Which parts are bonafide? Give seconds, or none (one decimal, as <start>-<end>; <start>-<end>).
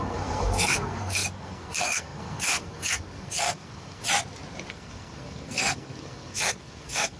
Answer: 4.0-4.7